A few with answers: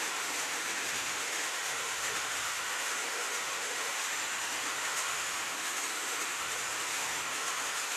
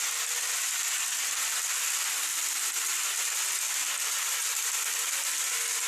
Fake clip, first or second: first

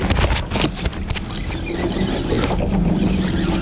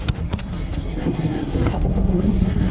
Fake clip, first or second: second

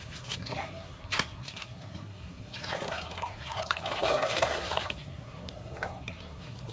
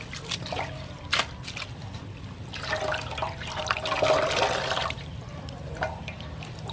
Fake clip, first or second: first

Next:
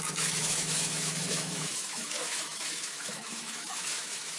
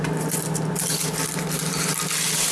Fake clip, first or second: first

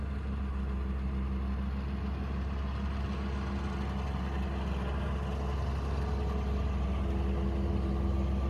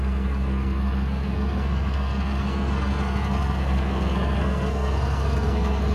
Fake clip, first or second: second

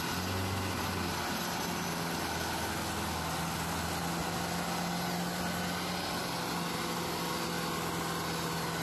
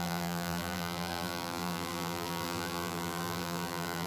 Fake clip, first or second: second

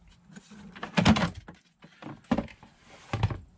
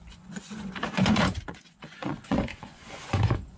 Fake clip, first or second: second